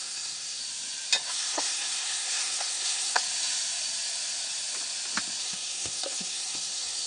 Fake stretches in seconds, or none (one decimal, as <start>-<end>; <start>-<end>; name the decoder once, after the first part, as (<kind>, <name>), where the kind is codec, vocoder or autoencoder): 0.0-0.6 (codec, SNAC); 1.3-3.2; 5.4-7.1